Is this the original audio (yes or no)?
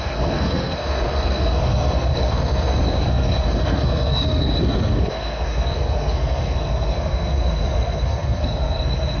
no